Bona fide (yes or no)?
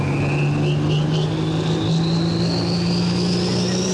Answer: yes